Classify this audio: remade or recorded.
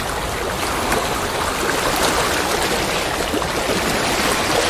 recorded